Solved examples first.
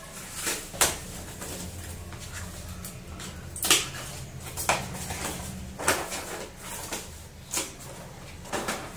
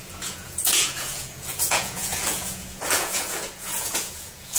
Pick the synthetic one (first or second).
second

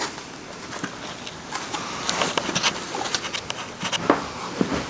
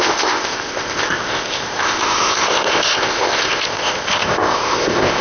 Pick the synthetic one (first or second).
second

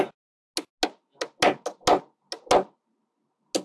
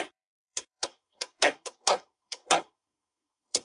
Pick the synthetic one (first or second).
second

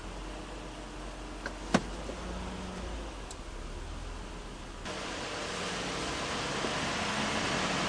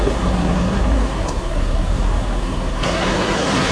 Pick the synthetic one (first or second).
second